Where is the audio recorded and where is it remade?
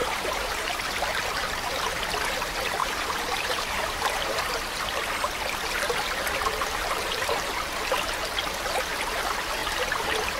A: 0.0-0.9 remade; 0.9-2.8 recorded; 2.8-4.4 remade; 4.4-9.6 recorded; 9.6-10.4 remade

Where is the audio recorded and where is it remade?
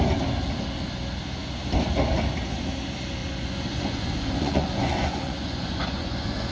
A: 0.0-3.2 recorded; 3.2-6.5 remade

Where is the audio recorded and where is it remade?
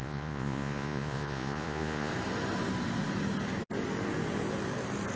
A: 0.0-2.1 remade; 2.1-5.2 recorded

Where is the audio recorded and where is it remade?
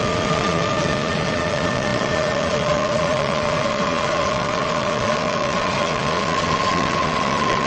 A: 0.0-7.7 remade